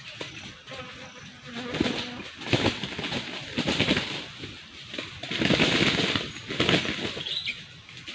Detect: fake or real real